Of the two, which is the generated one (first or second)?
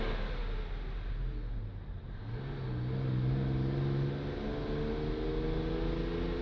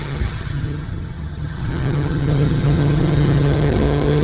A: second